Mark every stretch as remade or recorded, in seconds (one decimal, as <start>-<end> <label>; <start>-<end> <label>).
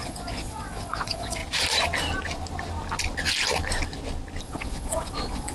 0.0-1.4 remade; 1.4-4.4 recorded; 4.4-5.5 remade